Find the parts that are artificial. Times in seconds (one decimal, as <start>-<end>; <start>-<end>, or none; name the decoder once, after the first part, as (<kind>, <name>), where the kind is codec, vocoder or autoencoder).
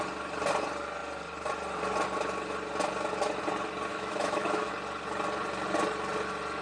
3.9-4.7 (autoencoder, DAC-VAE)